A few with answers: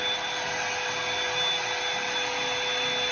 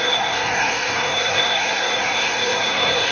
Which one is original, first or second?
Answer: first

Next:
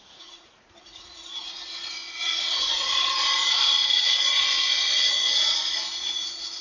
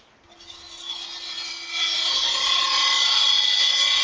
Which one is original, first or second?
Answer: second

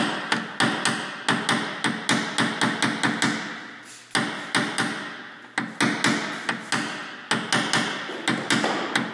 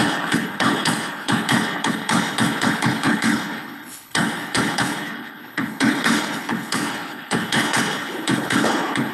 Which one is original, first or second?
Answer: first